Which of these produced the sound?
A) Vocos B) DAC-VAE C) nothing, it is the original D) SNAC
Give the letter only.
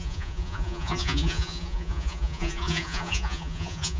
A